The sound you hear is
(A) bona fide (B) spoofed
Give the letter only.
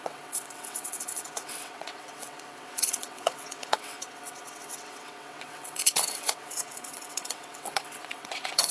B